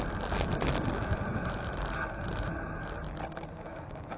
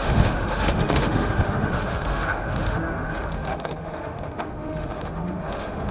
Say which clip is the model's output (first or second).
second